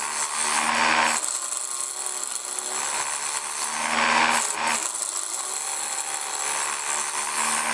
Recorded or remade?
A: recorded